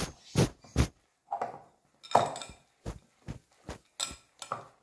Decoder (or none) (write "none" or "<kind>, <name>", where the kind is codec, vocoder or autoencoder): none